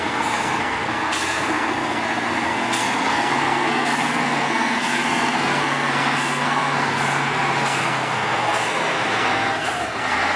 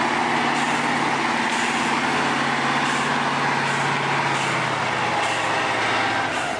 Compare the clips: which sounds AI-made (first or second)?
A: first